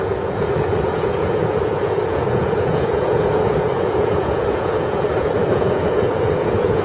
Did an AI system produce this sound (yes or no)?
yes